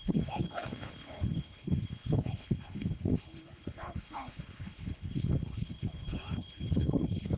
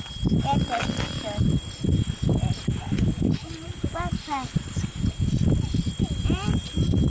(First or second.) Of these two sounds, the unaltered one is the second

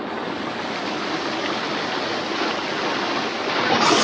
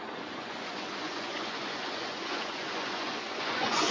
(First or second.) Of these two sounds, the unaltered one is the first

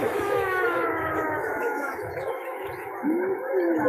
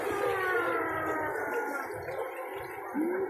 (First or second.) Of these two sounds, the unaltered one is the second